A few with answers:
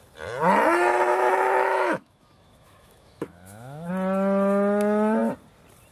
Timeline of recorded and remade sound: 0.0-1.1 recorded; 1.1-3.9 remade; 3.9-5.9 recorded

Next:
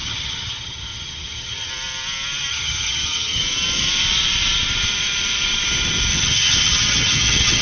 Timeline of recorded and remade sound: 0.0-1.7 remade; 1.7-2.5 recorded; 2.5-3.4 remade; 3.4-6.1 recorded; 6.1-7.6 remade